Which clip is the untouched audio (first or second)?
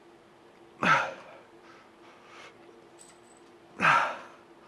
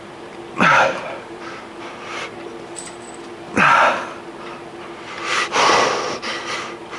first